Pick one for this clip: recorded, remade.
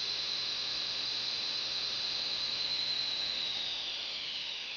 remade